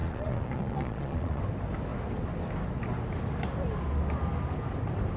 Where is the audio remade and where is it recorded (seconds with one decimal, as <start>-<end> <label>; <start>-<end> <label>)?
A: 0.0-1.4 remade; 1.4-5.2 recorded